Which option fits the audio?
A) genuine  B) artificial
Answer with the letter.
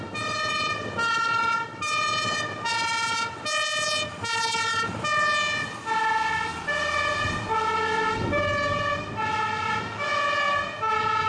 A